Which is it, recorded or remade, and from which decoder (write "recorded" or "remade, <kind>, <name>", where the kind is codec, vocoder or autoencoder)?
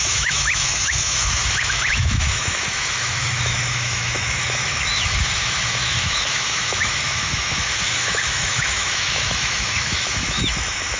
remade, autoencoder, DAC-VAE